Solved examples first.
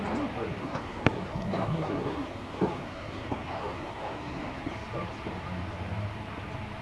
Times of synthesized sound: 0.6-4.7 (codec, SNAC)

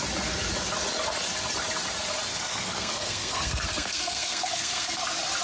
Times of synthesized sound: 2.3-5.0 (codec, SNAC)

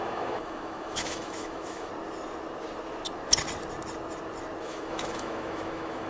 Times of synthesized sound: 0.0-1.9 (autoencoder, DAC-VAE); 4.6-6.1

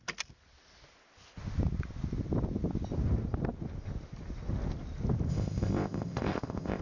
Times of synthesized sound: 5.3-6.8 (codec, ZipCodec)

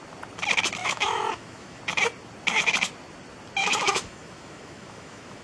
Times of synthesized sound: 0.8-1.8 (autoencoder, DAC-VAE); 3.6-5.4